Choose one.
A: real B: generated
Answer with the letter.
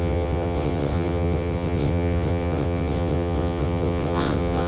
B